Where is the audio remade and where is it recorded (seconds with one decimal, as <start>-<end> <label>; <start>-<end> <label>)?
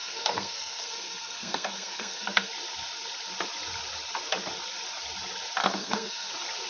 0.0-2.5 remade; 2.5-5.6 recorded; 5.6-6.3 remade; 6.3-6.7 recorded